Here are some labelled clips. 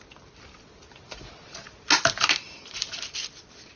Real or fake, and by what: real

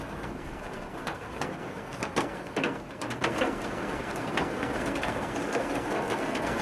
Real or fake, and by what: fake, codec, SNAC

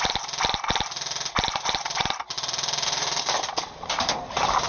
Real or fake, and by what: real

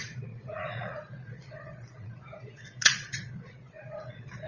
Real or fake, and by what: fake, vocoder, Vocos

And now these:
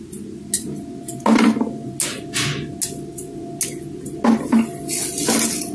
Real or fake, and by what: real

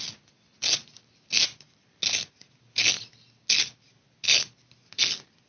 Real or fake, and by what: real